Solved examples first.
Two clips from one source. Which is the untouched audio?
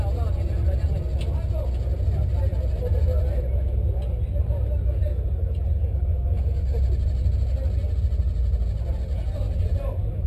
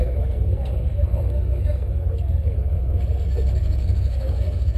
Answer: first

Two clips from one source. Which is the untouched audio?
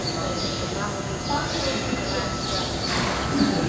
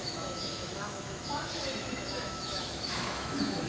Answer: first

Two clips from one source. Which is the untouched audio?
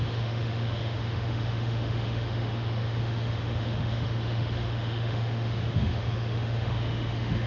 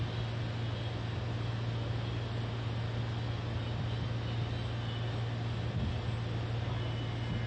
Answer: second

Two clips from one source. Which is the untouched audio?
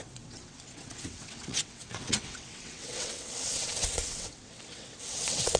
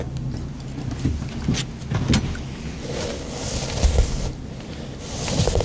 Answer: second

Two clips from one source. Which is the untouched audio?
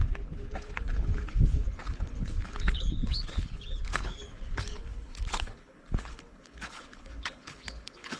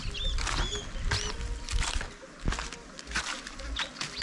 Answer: second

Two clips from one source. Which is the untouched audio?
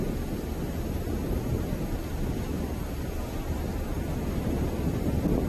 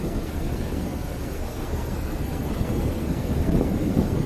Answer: first